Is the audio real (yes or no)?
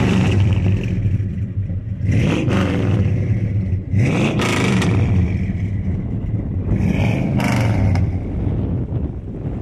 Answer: no